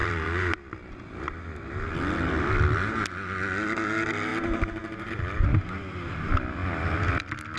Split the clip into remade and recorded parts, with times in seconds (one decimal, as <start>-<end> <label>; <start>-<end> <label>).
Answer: 0.0-0.9 remade; 0.9-7.6 recorded